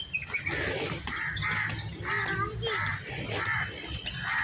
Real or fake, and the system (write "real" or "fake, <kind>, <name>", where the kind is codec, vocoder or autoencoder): real